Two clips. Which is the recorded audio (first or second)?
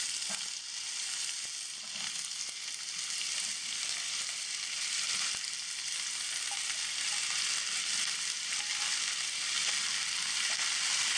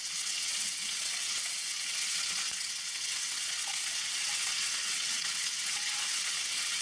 first